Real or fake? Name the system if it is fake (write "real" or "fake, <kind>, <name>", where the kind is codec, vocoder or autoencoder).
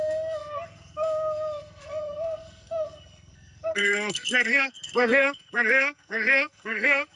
fake, codec, SNAC